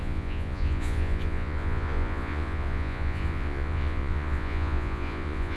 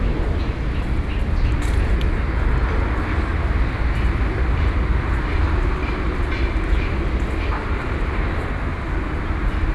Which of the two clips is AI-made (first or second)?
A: first